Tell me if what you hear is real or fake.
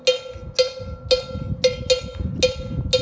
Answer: real